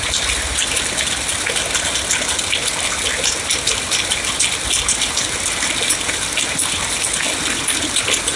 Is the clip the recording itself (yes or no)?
yes